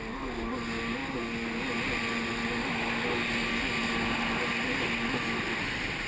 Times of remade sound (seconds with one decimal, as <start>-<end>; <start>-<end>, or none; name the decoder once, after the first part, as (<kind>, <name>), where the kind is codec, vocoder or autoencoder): none